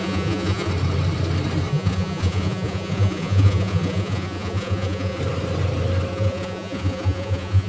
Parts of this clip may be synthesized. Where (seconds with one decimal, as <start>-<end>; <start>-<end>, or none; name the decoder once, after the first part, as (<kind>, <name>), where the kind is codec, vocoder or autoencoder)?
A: 0.0-0.7 (vocoder, Vocos); 1.7-5.2; 6.1-7.7